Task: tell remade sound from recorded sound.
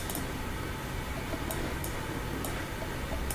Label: recorded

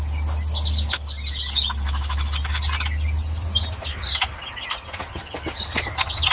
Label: recorded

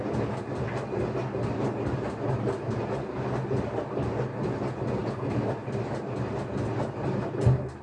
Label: recorded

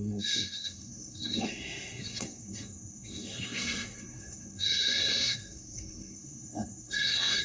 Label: remade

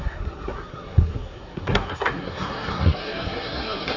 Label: remade